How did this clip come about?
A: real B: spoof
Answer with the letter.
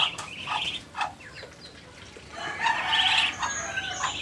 A